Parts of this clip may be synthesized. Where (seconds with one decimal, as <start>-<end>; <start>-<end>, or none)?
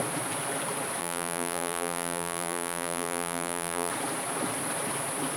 1.0-3.9